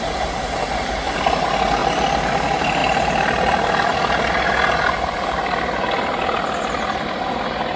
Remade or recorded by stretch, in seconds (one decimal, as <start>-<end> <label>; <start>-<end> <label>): 0.0-7.8 recorded